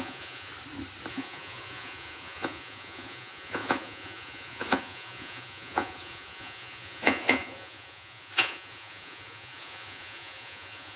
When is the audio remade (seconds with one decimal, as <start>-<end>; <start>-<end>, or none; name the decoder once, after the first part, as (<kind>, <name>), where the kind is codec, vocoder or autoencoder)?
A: 0.0-0.5 (vocoder, Vocos); 1.1-11.0

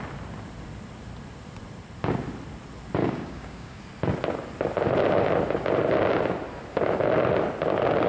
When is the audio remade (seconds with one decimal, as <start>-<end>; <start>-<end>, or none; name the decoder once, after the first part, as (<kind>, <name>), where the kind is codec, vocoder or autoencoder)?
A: 3.0-3.8 (codec, DAC)

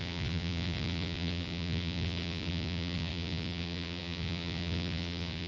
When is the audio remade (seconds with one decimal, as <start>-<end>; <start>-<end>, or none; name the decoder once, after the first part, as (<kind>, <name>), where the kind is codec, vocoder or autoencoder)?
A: 0.0-5.5 (vocoder, Vocos)

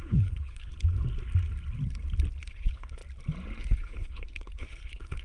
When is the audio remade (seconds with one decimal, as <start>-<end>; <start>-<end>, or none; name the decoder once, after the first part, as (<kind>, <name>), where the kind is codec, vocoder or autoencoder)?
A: 0.0-0.7 (codec, HILCodec); 2.5-3.0; 3.6-5.2